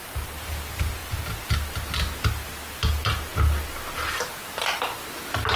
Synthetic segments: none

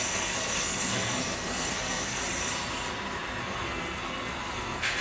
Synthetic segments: 0.0-2.2 (codec, SNAC); 3.4-5.0

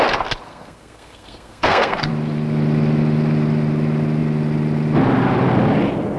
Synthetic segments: 0.5-2.1 (codec, SNAC)

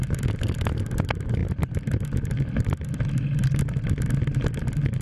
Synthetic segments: none

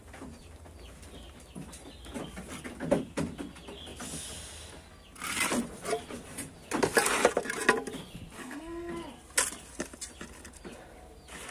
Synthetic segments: 8.4-8.9 (codec, SNAC)